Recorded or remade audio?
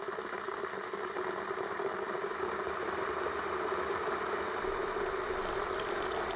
recorded